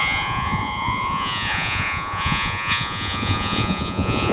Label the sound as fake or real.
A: fake